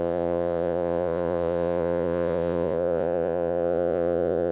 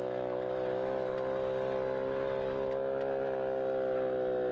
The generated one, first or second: first